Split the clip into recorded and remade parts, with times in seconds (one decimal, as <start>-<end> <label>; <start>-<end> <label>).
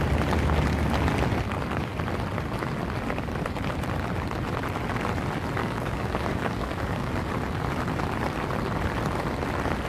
0.0-5.6 recorded; 5.6-7.1 remade; 7.1-9.9 recorded